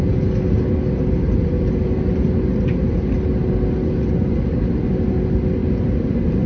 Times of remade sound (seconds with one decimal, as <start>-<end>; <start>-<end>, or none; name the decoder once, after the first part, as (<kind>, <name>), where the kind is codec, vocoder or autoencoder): none